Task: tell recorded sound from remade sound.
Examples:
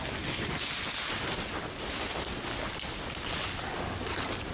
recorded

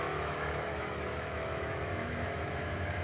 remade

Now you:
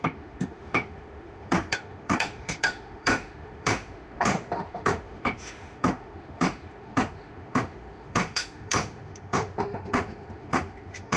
remade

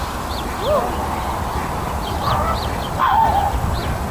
recorded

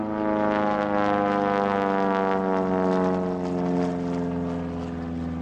recorded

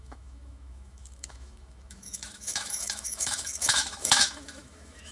remade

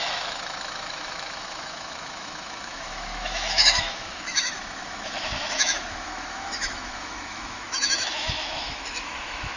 remade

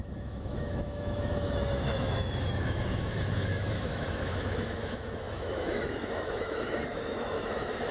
remade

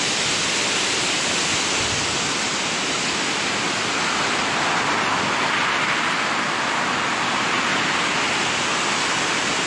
recorded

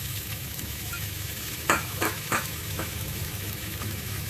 remade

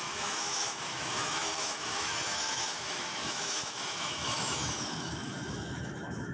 remade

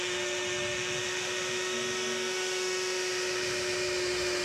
remade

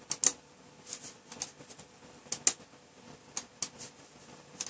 recorded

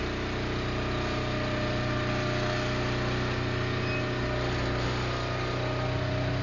recorded